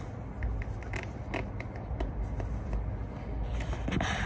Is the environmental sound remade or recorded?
recorded